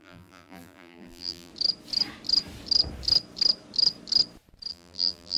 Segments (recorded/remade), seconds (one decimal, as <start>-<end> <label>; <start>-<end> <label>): 0.0-1.5 remade; 1.5-4.7 recorded; 4.7-5.4 remade